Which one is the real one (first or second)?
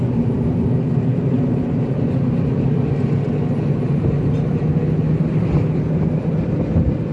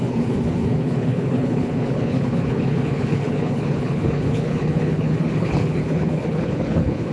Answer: first